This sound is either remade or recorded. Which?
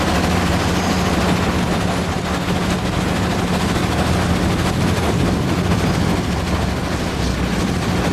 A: recorded